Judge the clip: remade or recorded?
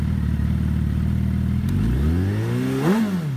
recorded